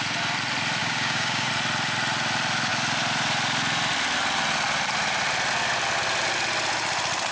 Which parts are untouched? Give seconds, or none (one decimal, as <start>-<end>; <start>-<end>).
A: 0.0-0.8; 1.5-7.3